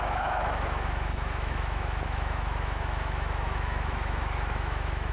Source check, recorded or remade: remade